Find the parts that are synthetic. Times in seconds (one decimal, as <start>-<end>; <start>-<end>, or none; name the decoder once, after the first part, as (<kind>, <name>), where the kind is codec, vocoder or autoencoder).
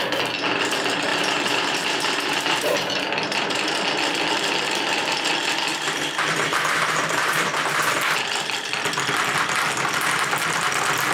1.1-4.1 (vocoder, BigVGAN v2); 5.7-7.8